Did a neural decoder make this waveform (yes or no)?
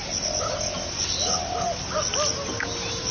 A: no